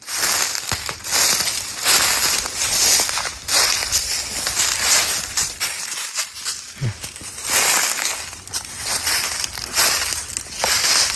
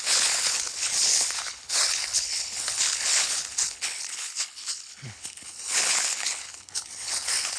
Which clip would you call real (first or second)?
first